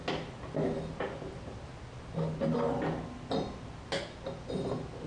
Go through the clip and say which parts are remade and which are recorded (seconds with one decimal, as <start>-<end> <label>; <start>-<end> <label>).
0.0-1.0 recorded; 1.0-1.7 remade; 1.7-5.1 recorded